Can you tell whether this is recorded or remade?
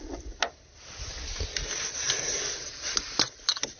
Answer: recorded